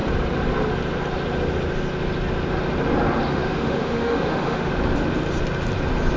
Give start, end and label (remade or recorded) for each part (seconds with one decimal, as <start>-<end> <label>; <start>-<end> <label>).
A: 0.0-3.3 recorded; 3.3-4.7 remade; 4.7-6.2 recorded